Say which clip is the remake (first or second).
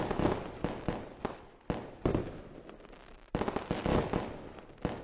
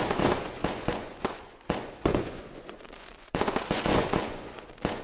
second